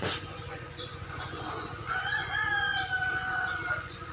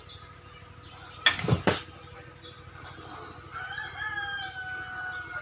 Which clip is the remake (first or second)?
first